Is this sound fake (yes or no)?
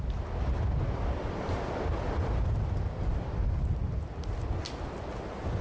no